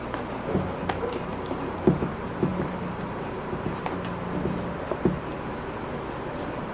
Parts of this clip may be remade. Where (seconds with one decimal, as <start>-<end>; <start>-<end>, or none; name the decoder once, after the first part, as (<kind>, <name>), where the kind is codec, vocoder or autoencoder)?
none